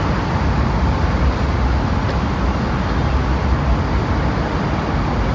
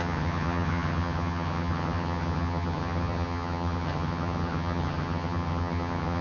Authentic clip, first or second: first